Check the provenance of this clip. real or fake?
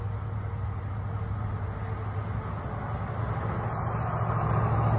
real